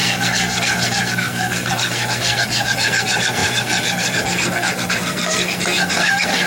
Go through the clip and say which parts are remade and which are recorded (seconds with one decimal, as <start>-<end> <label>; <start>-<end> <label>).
0.0-6.5 remade